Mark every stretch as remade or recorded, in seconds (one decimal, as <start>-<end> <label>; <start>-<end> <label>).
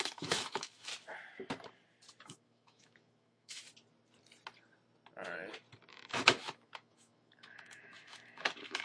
0.0-0.9 remade; 0.9-2.2 recorded; 2.2-3.6 remade; 3.6-5.9 recorded; 5.9-8.8 remade